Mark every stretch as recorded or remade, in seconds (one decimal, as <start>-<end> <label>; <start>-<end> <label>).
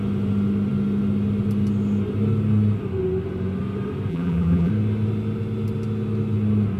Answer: 0.0-4.1 recorded; 4.1-4.7 remade; 4.7-6.8 recorded